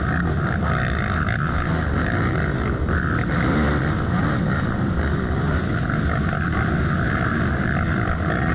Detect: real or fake real